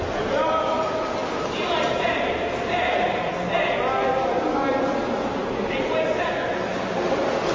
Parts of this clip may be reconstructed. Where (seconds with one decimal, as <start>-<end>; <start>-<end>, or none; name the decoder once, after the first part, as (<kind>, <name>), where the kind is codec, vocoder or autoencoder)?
none